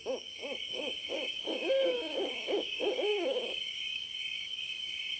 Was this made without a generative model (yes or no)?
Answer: no